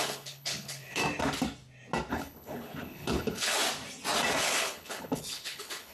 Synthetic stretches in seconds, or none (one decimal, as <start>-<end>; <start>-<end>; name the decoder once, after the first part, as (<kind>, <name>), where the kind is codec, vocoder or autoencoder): 0.0-1.0 (codec, HILCodec); 2.1-3.6; 4.4-5.9

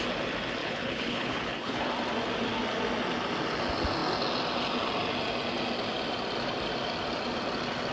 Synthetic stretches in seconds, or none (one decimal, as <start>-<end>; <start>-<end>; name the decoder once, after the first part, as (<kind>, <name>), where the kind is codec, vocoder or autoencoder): 0.6-1.9 (codec, HILCodec)

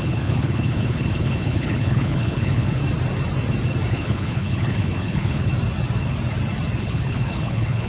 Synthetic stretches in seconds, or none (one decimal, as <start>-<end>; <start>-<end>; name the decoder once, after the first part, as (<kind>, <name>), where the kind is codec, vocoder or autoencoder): 0.0-2.8 (codec, HILCodec); 3.9-5.5; 6.8-7.9

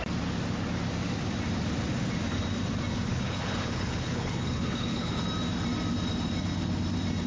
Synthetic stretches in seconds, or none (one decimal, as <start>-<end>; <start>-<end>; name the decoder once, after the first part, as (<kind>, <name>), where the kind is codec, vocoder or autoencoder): 3.1-5.2 (codec, HILCodec)

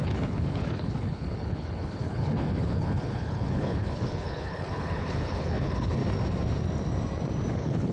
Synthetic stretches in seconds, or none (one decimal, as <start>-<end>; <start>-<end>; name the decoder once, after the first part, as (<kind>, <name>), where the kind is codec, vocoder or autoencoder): 0.0-6.0 (codec, HILCodec); 7.5-7.9

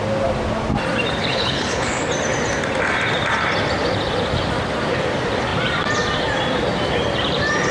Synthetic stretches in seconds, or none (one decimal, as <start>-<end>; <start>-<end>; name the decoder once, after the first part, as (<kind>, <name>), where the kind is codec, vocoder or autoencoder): 1.3-2.0 (codec, HILCodec)

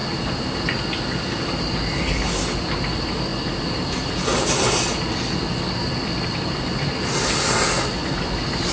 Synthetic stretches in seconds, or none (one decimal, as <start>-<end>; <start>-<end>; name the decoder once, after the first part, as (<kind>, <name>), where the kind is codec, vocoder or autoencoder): none